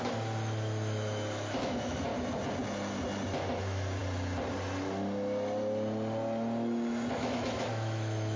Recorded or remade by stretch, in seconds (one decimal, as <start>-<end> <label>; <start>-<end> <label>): 0.0-2.1 remade; 2.1-3.6 recorded; 3.6-4.0 remade; 4.0-7.1 recorded; 7.1-8.4 remade